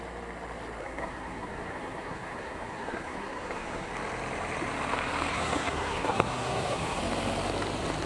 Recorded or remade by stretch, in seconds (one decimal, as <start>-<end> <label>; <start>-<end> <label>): 0.0-0.8 recorded; 0.8-3.9 remade; 3.9-5.3 recorded; 5.3-7.0 remade; 7.0-8.1 recorded